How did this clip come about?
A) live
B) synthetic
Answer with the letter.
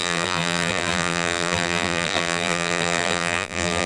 B